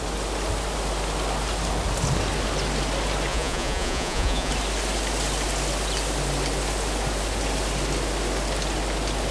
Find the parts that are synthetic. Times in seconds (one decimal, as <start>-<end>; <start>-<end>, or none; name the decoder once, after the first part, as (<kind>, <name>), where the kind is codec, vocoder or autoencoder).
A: 3.3-4.5 (vocoder, Vocos)